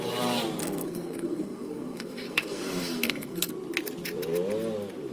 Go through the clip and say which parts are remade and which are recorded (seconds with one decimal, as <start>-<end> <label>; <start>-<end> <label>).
0.0-0.6 recorded; 0.6-3.5 remade; 3.5-5.1 recorded

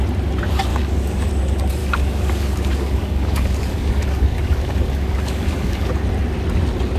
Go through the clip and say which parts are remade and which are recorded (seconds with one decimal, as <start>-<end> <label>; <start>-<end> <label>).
0.0-0.7 recorded; 0.7-1.3 remade; 1.3-1.8 recorded; 1.8-5.9 remade; 5.9-7.0 recorded

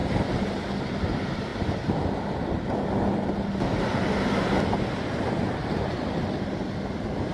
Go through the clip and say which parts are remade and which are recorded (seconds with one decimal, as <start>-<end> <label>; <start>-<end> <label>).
0.0-7.3 recorded

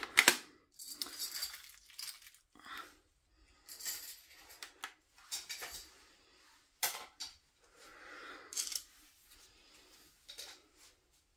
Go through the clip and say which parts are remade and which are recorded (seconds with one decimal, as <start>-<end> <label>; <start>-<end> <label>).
0.0-11.4 recorded